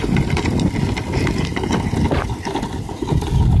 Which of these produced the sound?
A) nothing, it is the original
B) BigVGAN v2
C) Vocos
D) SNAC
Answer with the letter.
A